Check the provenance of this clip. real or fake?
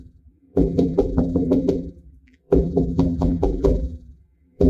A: fake